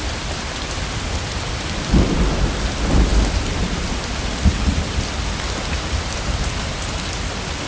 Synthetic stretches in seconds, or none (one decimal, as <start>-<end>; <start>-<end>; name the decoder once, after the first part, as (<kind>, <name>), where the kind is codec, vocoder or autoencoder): none